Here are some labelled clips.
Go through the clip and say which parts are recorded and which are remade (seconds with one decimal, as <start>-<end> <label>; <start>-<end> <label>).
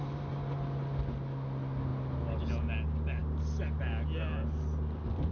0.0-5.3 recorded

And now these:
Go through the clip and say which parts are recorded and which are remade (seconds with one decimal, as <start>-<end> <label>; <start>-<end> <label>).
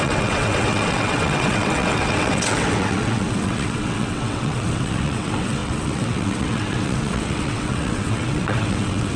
0.0-9.2 remade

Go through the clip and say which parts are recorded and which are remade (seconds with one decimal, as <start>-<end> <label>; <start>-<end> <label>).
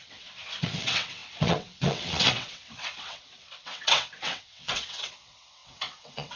0.0-6.4 remade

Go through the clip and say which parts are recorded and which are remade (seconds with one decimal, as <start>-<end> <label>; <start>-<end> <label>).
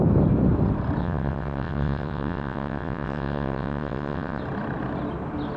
0.0-1.0 recorded; 1.0-4.4 remade; 4.4-5.6 recorded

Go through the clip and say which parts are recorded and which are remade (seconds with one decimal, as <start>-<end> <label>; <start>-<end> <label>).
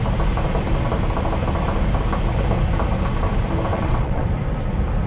0.0-3.7 recorded; 3.7-4.3 remade; 4.3-5.1 recorded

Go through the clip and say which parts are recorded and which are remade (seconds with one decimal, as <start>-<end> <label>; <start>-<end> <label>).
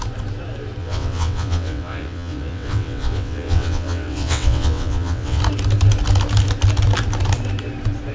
0.0-0.8 recorded; 0.8-5.4 remade; 5.4-8.1 recorded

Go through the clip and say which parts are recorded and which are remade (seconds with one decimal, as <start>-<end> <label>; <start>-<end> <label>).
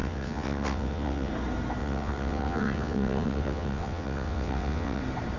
0.0-1.3 remade; 1.3-1.8 recorded; 1.8-5.0 remade; 5.0-5.4 recorded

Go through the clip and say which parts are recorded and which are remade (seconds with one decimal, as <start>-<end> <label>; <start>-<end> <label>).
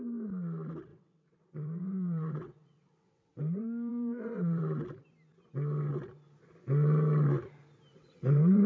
0.0-0.9 recorded; 0.9-3.2 remade; 3.2-3.9 recorded; 3.9-4.8 remade; 4.8-7.9 recorded; 7.9-8.7 remade